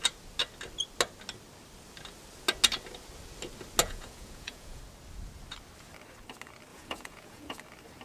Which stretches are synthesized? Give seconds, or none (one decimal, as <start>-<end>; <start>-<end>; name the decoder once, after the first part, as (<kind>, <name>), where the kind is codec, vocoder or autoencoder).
3.8-4.8 (vocoder, Vocos); 6.7-7.6